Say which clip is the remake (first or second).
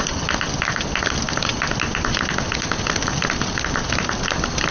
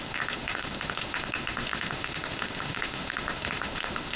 second